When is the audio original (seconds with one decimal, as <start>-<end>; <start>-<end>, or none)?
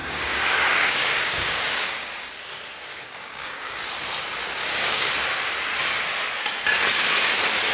2.3-2.9; 3.9-4.6; 5.1-7.7